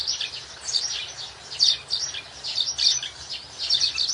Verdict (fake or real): real